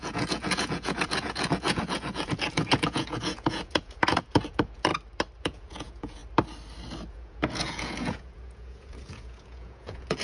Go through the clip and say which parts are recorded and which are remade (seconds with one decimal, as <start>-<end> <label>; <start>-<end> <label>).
0.0-4.9 remade; 4.9-5.4 recorded; 5.4-6.2 remade; 6.2-7.1 recorded; 7.1-10.2 remade